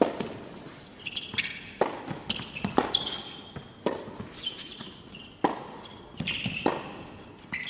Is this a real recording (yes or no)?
yes